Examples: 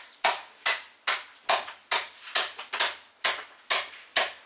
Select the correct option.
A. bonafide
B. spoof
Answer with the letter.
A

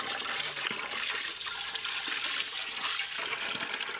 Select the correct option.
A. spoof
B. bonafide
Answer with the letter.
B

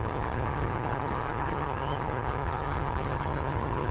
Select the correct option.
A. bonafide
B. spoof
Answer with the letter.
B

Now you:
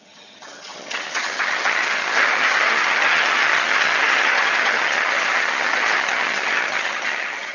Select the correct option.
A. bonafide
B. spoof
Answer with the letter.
B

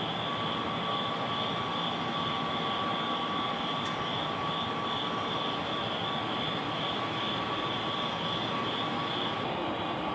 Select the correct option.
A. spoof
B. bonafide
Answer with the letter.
B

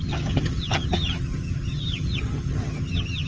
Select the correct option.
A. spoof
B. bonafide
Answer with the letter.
A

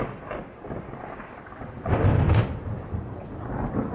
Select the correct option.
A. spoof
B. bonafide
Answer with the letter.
B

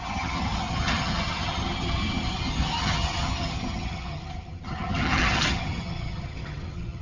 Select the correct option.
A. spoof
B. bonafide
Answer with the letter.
A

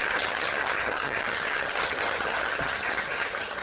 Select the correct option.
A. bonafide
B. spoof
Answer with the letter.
B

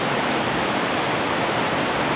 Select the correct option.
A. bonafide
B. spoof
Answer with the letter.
A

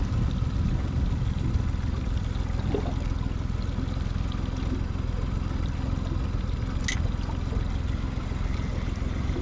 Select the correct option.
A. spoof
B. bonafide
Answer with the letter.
B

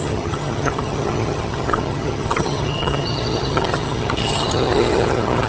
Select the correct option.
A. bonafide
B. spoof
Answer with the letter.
B